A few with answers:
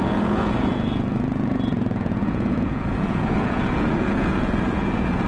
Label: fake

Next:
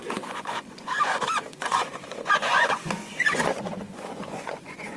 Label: fake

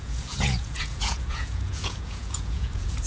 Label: fake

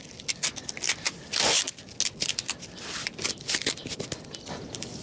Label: real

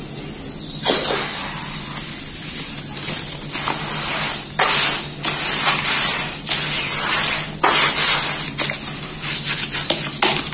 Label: real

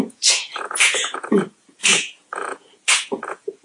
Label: fake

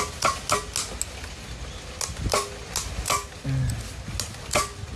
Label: real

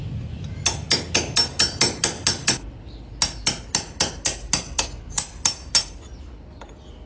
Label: real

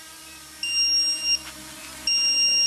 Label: real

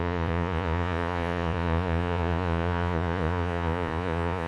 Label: fake